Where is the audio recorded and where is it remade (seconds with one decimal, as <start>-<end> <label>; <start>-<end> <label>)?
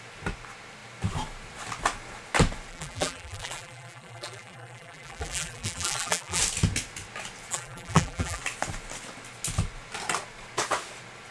0.0-2.7 recorded; 2.7-6.4 remade; 6.4-7.5 recorded; 7.5-8.4 remade; 8.4-11.3 recorded